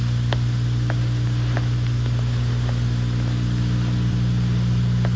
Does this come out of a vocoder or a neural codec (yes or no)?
no